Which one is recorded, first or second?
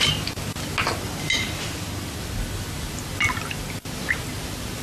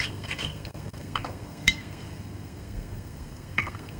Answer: first